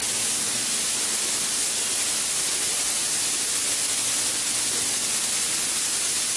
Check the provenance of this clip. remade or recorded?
recorded